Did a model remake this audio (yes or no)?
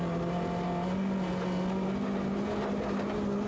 no